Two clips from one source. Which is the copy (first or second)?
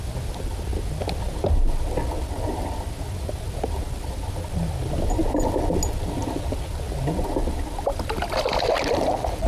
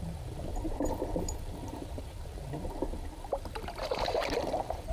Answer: second